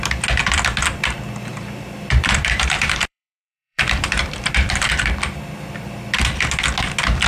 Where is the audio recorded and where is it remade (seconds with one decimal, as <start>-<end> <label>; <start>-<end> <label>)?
0.0-1.5 recorded; 1.5-4.9 remade; 4.9-7.3 recorded